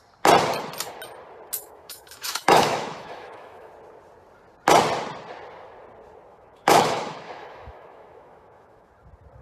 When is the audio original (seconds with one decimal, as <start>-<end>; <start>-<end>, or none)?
0.0-1.6; 3.7-6.3; 8.9-9.4